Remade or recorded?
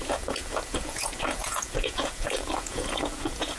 remade